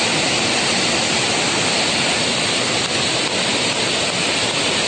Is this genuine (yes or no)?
yes